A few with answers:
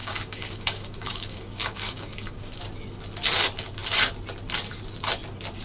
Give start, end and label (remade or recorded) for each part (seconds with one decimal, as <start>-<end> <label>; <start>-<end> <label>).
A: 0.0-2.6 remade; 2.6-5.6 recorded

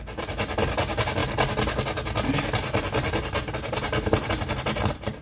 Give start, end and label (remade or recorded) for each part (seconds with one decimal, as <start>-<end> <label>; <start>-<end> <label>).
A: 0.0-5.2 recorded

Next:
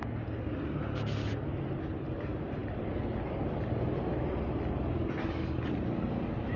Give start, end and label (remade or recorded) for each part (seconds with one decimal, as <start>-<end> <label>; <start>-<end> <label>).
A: 0.0-6.6 recorded

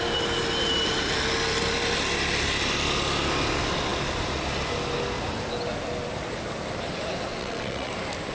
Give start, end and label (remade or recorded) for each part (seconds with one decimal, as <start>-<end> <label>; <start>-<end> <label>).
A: 0.0-7.3 recorded; 7.3-7.9 remade; 7.9-8.3 recorded